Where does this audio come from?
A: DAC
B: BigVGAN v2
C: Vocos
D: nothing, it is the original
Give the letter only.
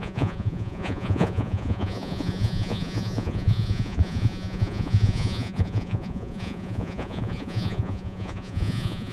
C